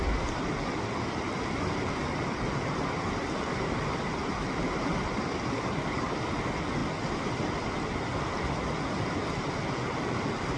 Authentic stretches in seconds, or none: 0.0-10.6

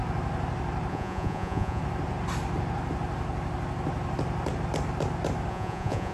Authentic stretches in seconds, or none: 0.0-0.9; 1.8-5.5

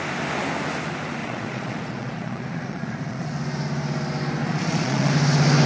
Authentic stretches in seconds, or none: 0.0-1.2; 3.3-4.4; 5.1-5.7

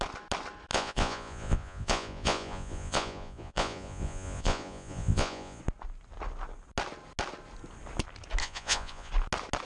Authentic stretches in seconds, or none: 0.0-0.7; 5.6-8.4; 9.1-9.6